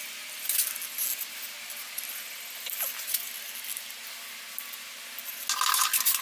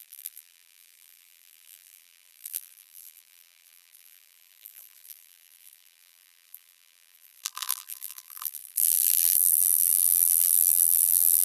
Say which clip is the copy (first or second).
second